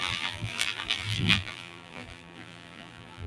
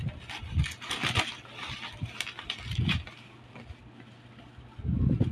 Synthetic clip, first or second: first